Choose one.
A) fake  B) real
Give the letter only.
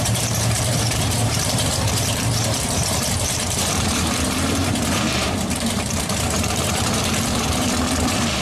A